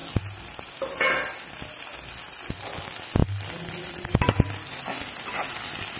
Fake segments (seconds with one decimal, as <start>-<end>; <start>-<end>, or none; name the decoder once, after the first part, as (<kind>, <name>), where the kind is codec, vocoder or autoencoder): 0.0-0.6 (vocoder, BigVGAN v2); 3.2-6.0